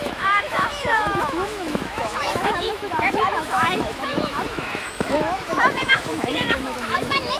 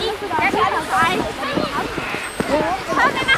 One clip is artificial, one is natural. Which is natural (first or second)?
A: second